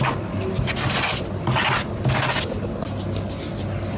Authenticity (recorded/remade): recorded